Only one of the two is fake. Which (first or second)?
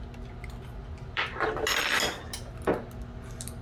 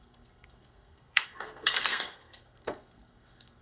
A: second